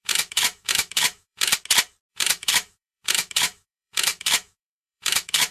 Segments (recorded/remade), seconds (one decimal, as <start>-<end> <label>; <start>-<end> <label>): 0.0-1.5 remade; 1.5-2.1 recorded; 2.1-5.5 remade

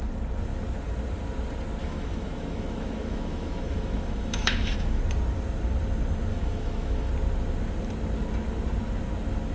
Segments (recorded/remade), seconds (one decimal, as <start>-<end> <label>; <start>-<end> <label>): 0.0-1.8 recorded; 1.8-5.0 remade; 5.0-6.3 recorded; 6.3-7.1 remade; 7.1-9.5 recorded

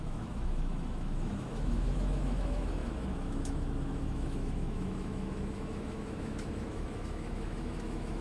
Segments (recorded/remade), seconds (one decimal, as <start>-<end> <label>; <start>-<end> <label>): 0.0-8.2 remade

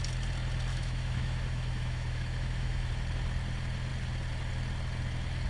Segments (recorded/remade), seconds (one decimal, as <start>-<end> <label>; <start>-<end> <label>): 0.0-0.7 recorded; 0.7-2.9 remade; 2.9-5.5 recorded

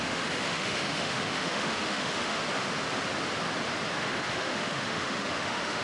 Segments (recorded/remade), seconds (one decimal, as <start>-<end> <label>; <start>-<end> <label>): 0.0-2.4 remade; 2.4-4.0 recorded; 4.0-5.8 remade

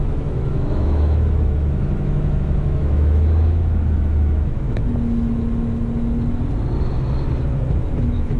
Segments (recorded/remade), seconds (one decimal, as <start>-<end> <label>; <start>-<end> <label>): 0.0-4.8 remade; 4.8-7.8 recorded; 7.8-8.4 remade

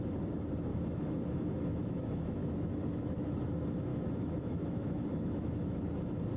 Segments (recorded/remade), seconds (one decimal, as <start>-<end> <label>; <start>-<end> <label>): 0.0-0.7 recorded; 0.7-3.5 remade; 3.5-3.9 recorded; 3.9-5.8 remade; 5.8-6.4 recorded